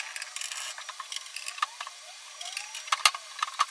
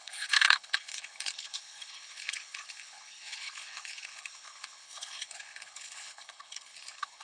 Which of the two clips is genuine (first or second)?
first